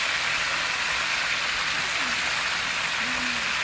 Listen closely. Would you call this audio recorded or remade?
recorded